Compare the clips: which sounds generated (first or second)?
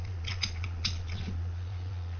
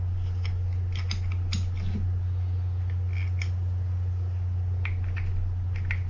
first